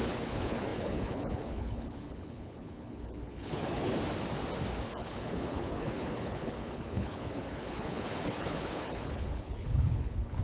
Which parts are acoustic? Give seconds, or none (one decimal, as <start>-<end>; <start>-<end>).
3.9-4.9